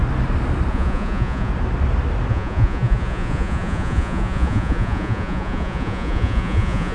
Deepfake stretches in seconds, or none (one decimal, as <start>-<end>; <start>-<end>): 0.7-1.5; 2.3-6.9